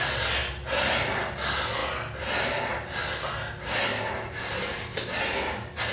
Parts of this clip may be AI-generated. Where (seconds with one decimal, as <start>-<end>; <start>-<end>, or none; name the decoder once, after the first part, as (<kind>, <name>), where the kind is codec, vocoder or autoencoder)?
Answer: none